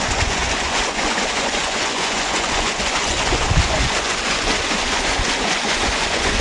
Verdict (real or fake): fake